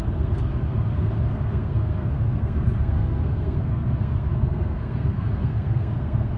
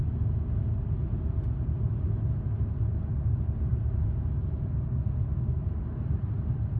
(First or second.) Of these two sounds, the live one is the second